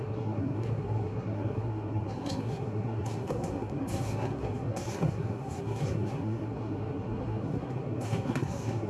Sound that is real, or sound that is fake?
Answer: fake